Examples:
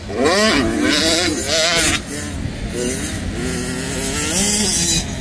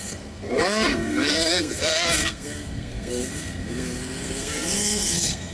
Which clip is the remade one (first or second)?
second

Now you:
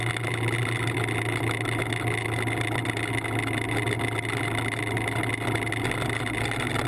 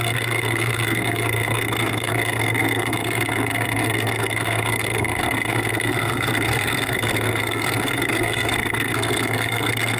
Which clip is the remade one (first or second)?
second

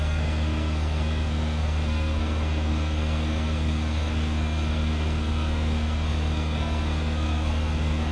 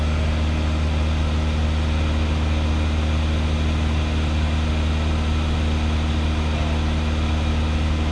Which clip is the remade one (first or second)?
first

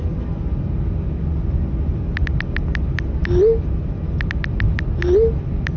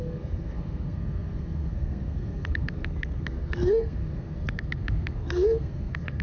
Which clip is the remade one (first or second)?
second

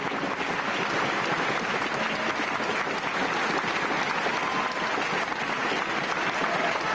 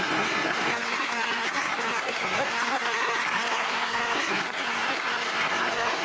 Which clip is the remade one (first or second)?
second